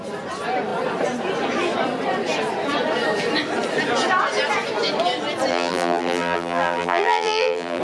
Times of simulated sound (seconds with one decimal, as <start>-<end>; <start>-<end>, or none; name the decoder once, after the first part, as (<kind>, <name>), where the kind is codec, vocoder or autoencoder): 5.5-7.8 (vocoder, BigVGAN v2)